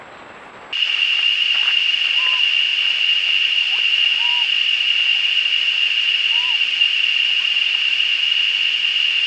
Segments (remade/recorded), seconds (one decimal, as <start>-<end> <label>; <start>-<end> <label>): 0.0-5.1 recorded; 5.1-8.4 remade; 8.4-9.3 recorded